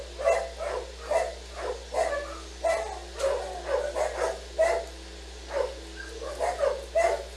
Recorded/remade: recorded